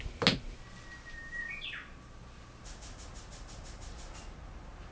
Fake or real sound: real